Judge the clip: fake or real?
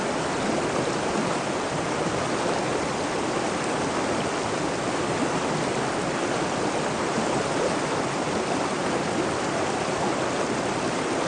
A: real